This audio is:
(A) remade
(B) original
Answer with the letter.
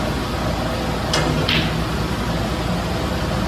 B